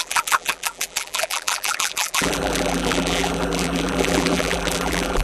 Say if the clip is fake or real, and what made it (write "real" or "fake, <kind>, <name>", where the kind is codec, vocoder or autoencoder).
fake, vocoder, BigVGAN v2